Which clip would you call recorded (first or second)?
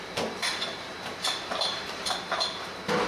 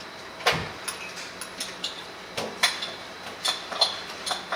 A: second